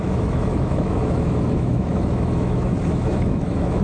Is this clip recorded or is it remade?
remade